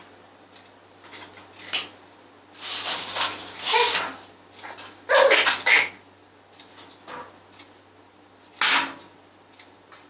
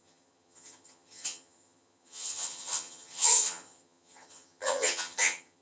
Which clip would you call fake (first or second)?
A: second